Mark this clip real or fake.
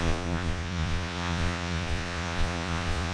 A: fake